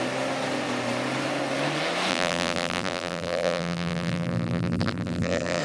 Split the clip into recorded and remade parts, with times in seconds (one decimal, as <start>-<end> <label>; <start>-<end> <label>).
0.0-2.1 recorded; 2.1-5.6 remade